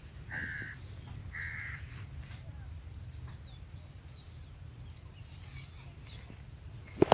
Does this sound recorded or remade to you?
recorded